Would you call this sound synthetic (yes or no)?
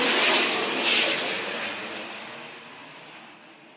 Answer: no